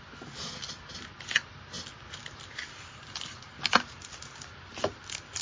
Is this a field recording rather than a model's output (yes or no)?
yes